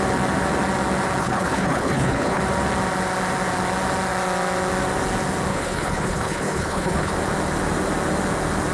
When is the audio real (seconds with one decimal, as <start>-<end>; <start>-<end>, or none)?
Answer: 0.0-1.2; 2.4-5.5; 7.1-8.7

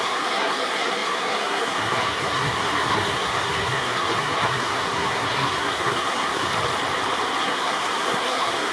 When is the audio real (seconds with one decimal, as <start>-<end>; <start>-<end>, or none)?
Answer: 6.5-7.4

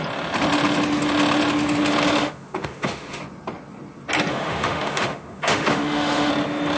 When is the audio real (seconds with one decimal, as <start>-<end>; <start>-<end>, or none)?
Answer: 0.0-2.2; 3.2-4.3; 6.3-6.8

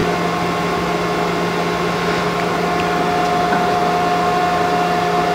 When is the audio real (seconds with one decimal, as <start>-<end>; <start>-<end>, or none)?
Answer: 0.0-5.3

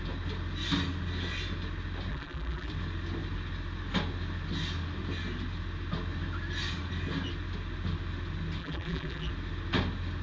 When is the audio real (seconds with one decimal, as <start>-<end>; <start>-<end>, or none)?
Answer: 0.0-2.1; 2.7-8.6; 9.3-10.2

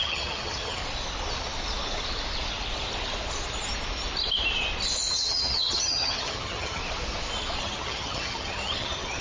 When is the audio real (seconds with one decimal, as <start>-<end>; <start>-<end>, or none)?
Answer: 0.8-5.1; 6.8-7.6

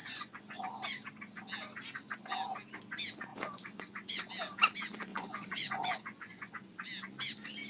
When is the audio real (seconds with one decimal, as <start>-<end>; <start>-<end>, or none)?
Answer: 0.6-3.3; 4.3-5.1; 6.5-7.7

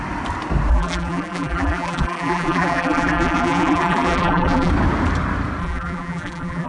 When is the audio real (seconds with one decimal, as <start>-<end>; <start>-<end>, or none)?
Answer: 0.0-0.7; 4.7-5.6